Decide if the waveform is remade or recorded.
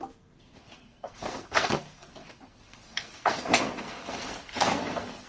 remade